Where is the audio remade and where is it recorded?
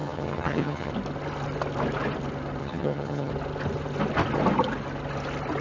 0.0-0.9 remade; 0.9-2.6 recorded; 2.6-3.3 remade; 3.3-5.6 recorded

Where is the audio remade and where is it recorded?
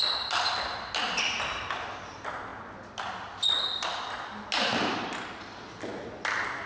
0.0-6.7 recorded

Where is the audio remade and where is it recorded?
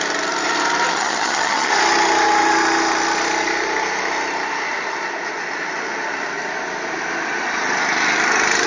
0.0-0.9 recorded; 0.9-1.7 remade; 1.7-8.7 recorded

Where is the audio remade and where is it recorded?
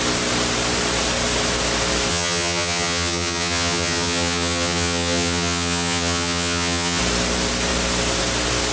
0.0-2.1 recorded; 2.1-7.0 remade; 7.0-8.7 recorded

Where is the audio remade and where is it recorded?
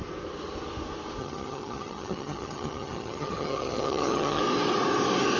0.0-1.2 recorded; 1.2-4.4 remade; 4.4-5.4 recorded